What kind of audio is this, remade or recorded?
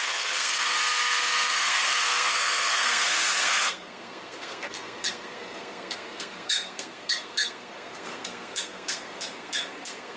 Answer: remade